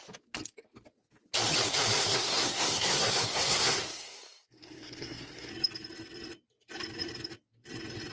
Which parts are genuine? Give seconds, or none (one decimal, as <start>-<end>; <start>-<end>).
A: 0.0-2.0; 5.5-8.1